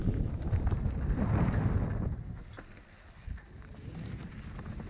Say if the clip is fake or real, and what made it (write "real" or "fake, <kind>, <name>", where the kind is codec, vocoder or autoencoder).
real